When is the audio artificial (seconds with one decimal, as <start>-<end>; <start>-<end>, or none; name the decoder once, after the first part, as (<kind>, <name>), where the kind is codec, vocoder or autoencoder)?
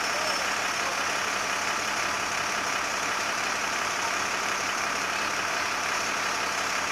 2.9-6.1 (vocoder, BigVGAN v2)